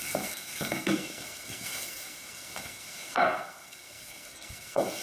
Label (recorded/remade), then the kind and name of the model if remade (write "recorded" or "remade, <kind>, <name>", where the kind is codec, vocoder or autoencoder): remade, codec, SNAC